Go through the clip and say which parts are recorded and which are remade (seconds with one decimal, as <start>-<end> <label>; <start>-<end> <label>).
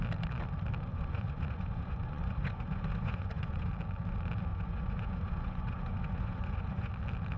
0.0-0.9 recorded; 0.9-3.7 remade; 3.7-4.5 recorded; 4.5-6.9 remade; 6.9-7.4 recorded